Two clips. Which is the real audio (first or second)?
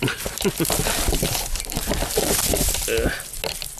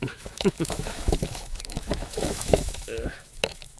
first